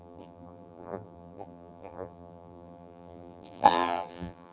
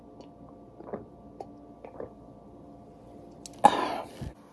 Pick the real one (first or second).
second